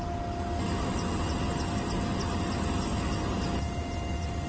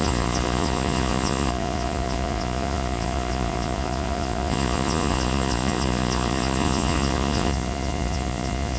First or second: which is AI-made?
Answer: second